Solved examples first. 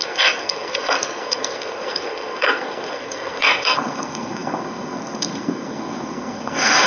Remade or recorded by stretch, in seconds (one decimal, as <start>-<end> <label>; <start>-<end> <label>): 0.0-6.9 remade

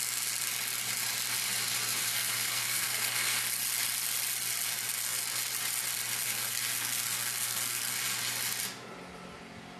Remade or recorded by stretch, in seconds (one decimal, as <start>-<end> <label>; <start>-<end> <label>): 0.0-2.0 recorded; 2.0-3.4 remade; 3.4-6.3 recorded; 6.3-7.9 remade; 7.9-9.8 recorded

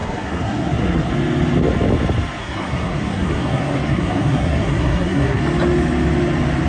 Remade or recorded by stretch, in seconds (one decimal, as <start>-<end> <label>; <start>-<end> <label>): 0.0-1.1 remade; 1.1-2.4 recorded; 2.4-5.4 remade; 5.4-6.7 recorded